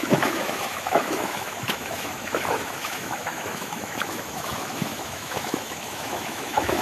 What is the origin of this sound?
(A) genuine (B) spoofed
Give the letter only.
B